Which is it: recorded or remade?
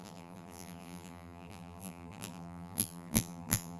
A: remade